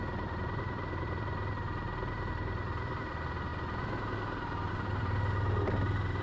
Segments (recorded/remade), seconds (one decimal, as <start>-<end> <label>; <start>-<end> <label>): 0.0-3.5 remade; 3.5-4.7 recorded; 4.7-6.2 remade

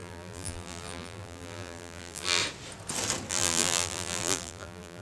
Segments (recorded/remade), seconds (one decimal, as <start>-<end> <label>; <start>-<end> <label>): 0.0-2.4 remade; 2.4-3.3 recorded; 3.3-5.0 remade

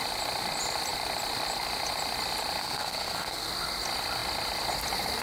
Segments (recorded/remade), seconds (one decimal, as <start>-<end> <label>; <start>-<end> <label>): 0.0-2.6 recorded; 2.6-3.5 remade; 3.5-5.2 recorded

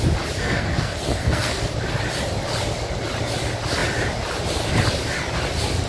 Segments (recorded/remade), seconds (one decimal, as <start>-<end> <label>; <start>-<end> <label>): 0.0-0.4 recorded; 0.4-1.6 remade; 1.6-5.9 recorded

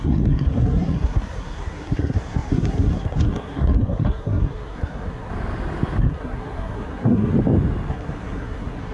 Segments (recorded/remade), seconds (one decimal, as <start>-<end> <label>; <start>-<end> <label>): 0.0-5.3 remade; 5.3-6.0 recorded; 6.0-7.3 remade; 7.3-7.9 recorded; 7.9-8.9 remade